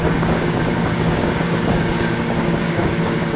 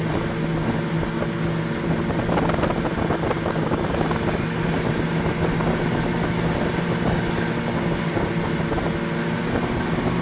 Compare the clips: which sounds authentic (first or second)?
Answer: second